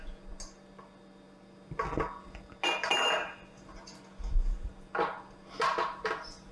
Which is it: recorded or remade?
recorded